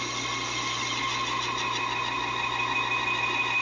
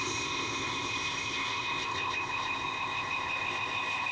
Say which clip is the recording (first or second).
first